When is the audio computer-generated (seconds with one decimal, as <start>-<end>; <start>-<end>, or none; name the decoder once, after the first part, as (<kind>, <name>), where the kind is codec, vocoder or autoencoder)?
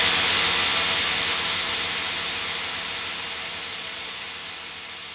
3.7-4.2 (vocoder, Vocos)